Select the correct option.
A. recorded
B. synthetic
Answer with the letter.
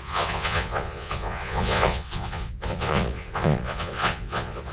B